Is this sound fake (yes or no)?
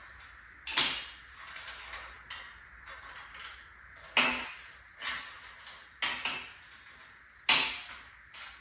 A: no